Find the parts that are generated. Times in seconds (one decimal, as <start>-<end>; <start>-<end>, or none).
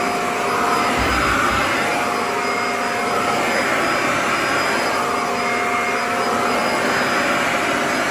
none